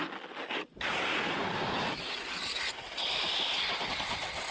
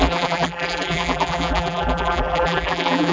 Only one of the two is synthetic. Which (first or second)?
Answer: second